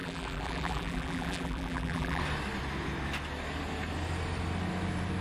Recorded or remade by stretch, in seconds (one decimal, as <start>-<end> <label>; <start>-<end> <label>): 0.0-2.2 remade; 2.2-5.2 recorded